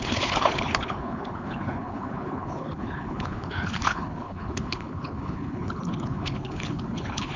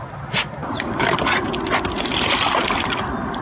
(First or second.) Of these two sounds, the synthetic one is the first